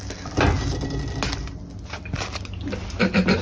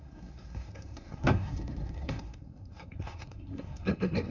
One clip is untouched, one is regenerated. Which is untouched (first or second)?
first